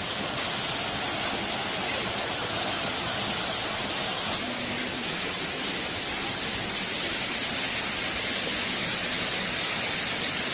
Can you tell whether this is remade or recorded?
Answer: recorded